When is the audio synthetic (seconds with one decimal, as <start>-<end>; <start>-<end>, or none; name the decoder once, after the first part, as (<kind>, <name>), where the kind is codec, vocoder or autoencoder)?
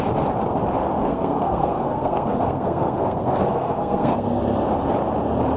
1.0-4.4 (codec, SNAC)